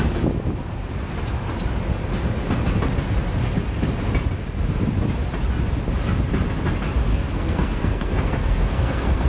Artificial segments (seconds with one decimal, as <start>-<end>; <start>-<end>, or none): 7.1-9.3